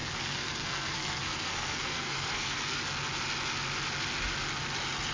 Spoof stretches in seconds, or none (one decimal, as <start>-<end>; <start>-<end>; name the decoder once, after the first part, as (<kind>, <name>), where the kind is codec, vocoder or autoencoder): 0.0-2.8 (codec, SNAC)